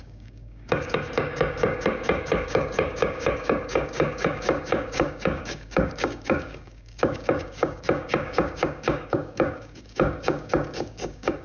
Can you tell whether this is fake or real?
fake